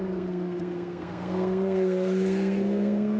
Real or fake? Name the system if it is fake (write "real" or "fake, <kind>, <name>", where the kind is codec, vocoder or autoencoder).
fake, codec, SNAC